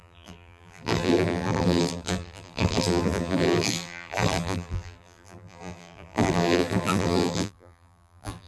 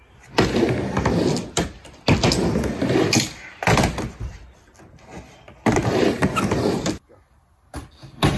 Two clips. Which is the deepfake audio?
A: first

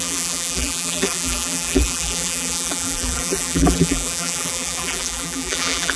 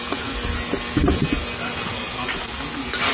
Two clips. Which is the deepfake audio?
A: first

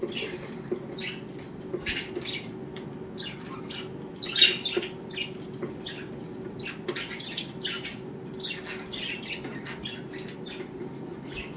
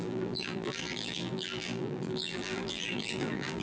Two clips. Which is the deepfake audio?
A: second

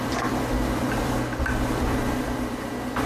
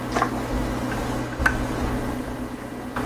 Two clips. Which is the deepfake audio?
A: first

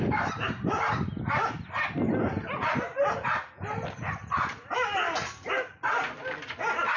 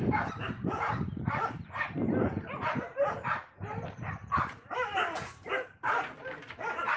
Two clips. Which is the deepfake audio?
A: second